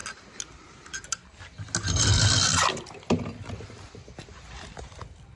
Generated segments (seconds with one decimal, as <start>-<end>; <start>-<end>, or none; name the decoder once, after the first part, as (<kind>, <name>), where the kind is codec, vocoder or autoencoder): none